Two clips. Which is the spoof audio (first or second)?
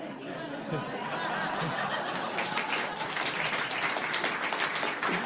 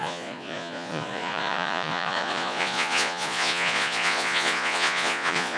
second